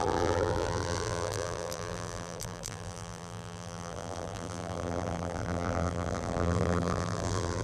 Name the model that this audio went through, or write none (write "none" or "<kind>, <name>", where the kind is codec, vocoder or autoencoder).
vocoder, BigVGAN v2